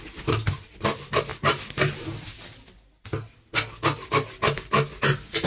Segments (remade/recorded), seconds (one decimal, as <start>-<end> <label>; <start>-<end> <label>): 0.0-5.5 recorded